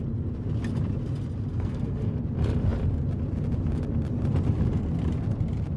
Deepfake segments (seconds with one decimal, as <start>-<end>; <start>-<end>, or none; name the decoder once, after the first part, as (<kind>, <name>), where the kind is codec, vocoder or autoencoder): 1.5-2.1 (codec, SNAC)